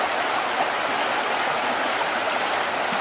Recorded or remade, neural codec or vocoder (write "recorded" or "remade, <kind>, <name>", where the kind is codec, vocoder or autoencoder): recorded